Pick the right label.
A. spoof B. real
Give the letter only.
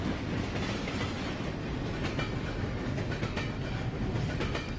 B